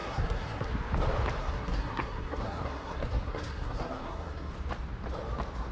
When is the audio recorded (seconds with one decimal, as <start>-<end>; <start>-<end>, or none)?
0.7-1.4; 4.5-5.7